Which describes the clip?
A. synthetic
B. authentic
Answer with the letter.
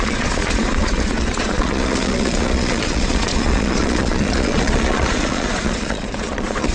A